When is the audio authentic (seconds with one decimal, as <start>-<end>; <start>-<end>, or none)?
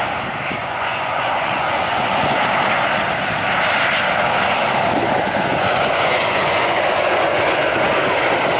0.0-0.6; 2.4-5.5; 7.9-8.6